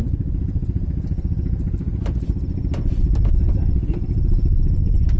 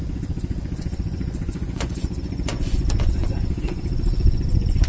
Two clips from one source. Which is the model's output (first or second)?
second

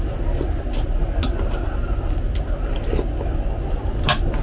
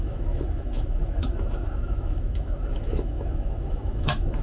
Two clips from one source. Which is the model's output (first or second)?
second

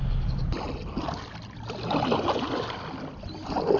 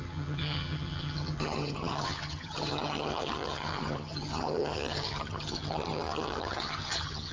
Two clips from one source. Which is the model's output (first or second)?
second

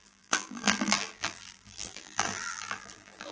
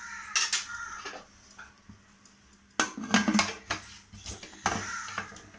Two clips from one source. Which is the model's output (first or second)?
first